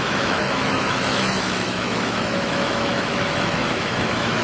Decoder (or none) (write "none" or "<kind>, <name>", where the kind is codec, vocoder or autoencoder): autoencoder, DAC-VAE